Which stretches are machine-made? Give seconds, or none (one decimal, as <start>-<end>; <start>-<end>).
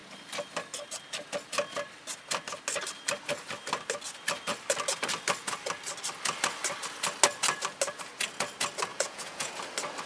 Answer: 8.9-9.5